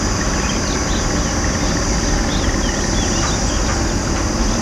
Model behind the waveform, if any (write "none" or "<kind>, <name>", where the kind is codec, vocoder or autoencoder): none